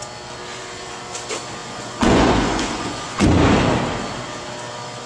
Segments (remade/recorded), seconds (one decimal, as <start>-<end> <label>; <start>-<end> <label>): 0.0-0.5 recorded; 0.5-1.0 remade; 1.0-1.6 recorded; 1.6-3.5 remade; 3.5-5.1 recorded